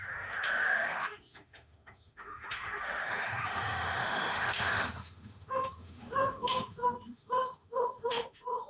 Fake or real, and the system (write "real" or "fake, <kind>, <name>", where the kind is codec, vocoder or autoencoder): fake, autoencoder, DAC-VAE